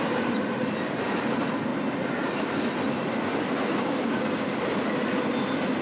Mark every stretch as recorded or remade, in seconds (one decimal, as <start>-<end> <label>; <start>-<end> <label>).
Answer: 0.0-5.8 recorded

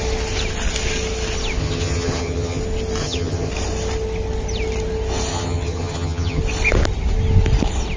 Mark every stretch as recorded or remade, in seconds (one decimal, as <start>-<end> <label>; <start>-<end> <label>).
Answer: 0.0-1.6 recorded; 1.6-2.6 remade; 2.6-3.0 recorded; 3.0-3.5 remade; 3.5-5.3 recorded; 5.3-6.4 remade; 6.4-8.0 recorded